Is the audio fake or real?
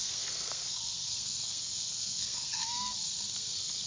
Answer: fake